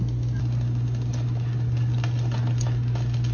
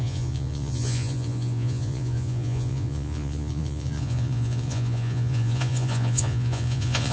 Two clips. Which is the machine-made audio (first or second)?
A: second